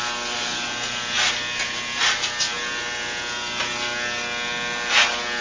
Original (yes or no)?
yes